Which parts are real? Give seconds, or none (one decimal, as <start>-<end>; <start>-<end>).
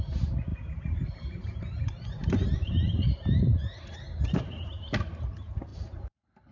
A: 0.0-0.5; 4.4-5.7